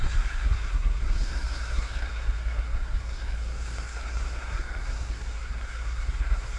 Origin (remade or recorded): remade